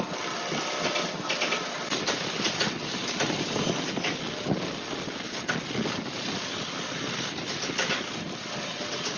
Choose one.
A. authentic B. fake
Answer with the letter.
A